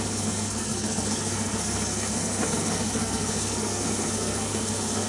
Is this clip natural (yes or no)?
no